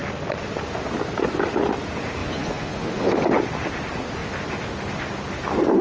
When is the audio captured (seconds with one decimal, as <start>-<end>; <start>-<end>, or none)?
0.0-2.2; 3.1-5.8